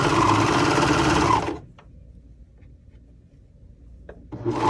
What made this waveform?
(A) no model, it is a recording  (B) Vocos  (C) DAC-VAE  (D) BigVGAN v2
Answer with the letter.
A